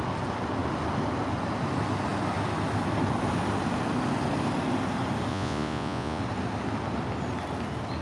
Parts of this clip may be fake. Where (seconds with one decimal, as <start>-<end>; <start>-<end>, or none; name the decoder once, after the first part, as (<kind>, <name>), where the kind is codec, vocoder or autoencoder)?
5.3-6.2 (vocoder, Vocos)